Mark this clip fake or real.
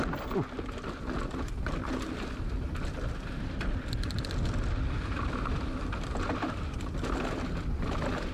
real